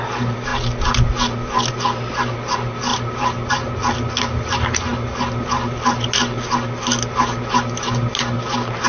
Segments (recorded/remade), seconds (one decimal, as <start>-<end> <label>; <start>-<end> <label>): 0.0-8.9 recorded